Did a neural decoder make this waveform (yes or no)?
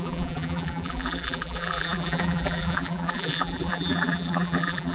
yes